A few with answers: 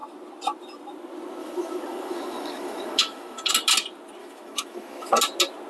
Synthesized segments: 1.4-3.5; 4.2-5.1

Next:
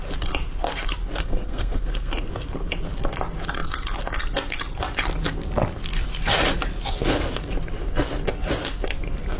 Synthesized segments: 1.2-2.1

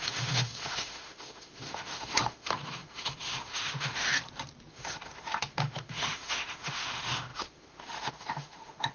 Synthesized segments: 0.0-4.1; 4.7-8.9

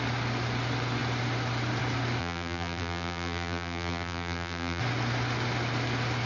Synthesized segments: 2.2-4.8

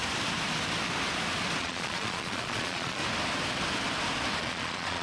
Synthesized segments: 1.6-3.0; 4.4-5.0

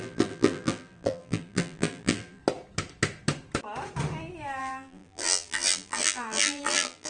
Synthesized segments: 0.0-2.4; 4.6-7.1

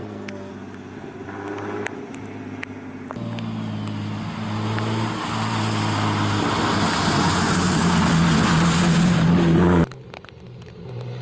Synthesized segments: 0.0-0.5

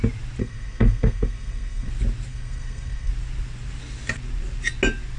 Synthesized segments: 0.4-1.9; 2.3-3.1